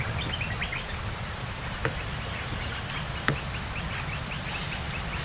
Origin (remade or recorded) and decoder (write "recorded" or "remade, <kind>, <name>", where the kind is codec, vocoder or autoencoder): recorded